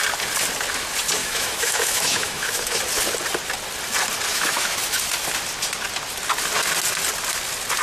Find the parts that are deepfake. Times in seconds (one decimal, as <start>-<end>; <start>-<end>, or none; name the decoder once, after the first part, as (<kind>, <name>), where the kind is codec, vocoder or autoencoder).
1.2-2.8 (autoencoder, DAC-VAE); 4.3-5.1